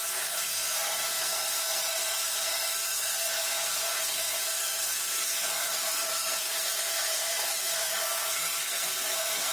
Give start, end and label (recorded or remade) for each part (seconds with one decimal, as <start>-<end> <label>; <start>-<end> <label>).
0.0-9.5 remade